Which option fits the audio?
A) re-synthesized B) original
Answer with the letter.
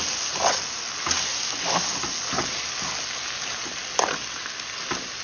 B